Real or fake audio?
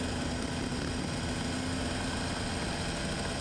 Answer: real